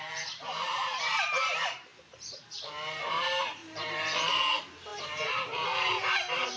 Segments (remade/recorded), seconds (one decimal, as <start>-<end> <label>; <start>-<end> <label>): 0.0-6.6 remade